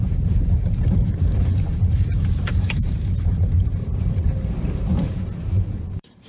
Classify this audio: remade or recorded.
remade